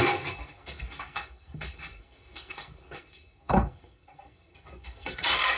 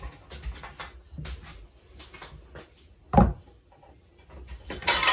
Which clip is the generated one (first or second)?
first